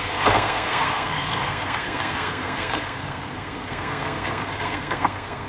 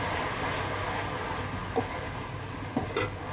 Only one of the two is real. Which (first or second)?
second